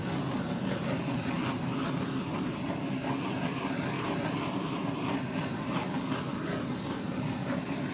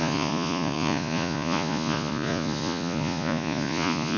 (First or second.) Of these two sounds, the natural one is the first